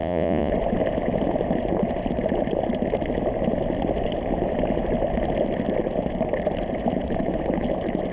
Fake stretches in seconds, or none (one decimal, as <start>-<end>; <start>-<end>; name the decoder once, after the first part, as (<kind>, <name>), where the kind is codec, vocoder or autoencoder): 0.0-0.5 (vocoder, Vocos)